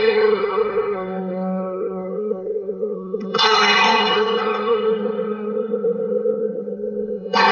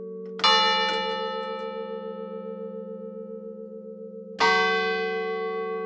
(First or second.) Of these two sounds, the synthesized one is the first